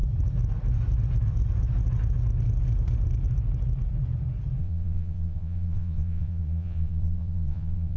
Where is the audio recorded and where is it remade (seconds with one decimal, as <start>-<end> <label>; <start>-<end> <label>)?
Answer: 0.0-4.6 recorded; 4.6-8.0 remade